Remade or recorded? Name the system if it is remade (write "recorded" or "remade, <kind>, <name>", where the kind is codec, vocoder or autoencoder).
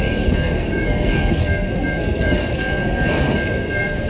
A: remade, codec, SNAC